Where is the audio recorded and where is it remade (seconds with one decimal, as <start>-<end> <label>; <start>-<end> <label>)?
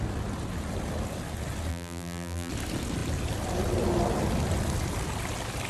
0.0-1.7 recorded; 1.7-2.5 remade; 2.5-5.7 recorded